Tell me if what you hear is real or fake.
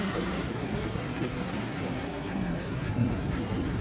fake